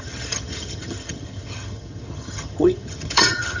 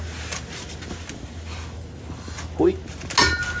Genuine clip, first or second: second